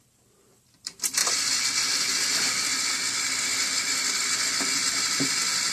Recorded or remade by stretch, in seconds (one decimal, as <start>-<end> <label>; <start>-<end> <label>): 0.0-1.2 remade; 1.2-2.1 recorded; 2.1-2.7 remade; 2.7-5.3 recorded; 5.3-5.7 remade